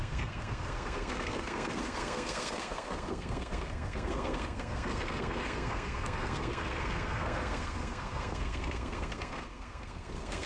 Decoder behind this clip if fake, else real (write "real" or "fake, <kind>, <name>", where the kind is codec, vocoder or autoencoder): fake, codec, SNAC